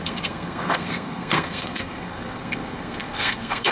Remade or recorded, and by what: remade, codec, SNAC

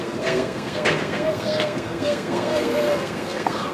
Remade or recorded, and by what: remade, codec, SNAC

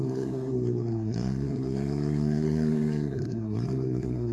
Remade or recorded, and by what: remade, codec, SNAC